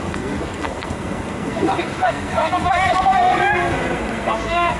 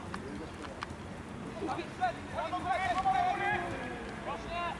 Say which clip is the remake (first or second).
first